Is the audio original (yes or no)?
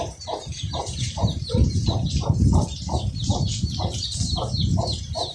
no